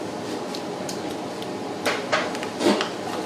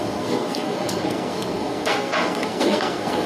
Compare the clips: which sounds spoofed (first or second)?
second